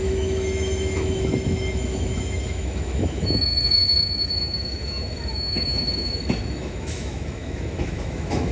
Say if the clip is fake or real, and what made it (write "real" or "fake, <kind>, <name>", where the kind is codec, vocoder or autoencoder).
fake, autoencoder, DAC-VAE